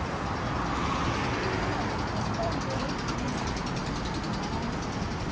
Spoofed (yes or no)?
no